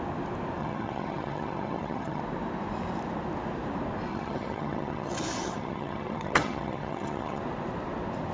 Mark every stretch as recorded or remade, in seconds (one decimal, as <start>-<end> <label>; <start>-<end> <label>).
0.0-0.6 recorded; 0.6-2.2 remade; 2.2-4.1 recorded; 4.1-7.4 remade; 7.4-8.3 recorded